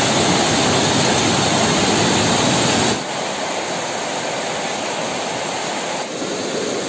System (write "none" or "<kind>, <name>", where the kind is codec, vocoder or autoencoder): none